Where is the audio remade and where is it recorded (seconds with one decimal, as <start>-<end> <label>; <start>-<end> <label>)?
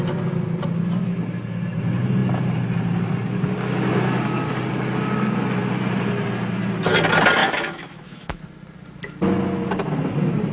0.0-7.4 recorded; 7.4-8.4 remade; 8.4-10.5 recorded